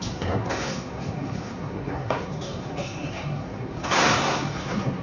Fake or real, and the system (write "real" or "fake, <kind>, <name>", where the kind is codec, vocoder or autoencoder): fake, codec, SNAC